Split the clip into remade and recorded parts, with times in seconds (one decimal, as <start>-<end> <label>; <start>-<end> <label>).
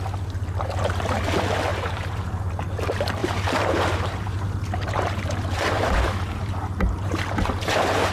0.0-1.7 recorded; 1.7-2.4 remade; 2.4-3.2 recorded; 3.2-8.1 remade